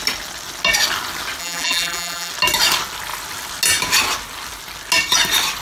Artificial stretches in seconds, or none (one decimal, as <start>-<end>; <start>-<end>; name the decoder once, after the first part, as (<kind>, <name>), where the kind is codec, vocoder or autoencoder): 1.4-2.3 (vocoder, BigVGAN v2)